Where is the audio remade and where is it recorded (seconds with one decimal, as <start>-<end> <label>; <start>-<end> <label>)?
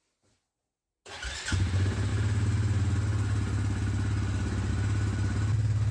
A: 0.0-5.9 recorded